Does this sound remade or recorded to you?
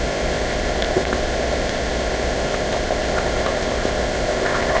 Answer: remade